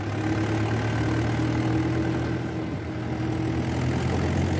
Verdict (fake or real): real